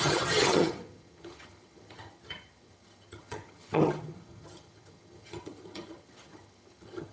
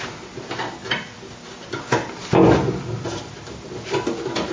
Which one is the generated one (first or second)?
first